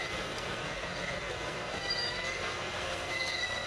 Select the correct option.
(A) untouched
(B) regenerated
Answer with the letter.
B